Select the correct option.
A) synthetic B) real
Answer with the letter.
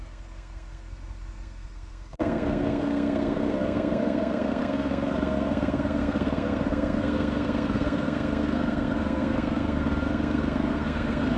A